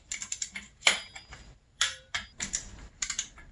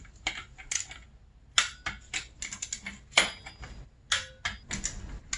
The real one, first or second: second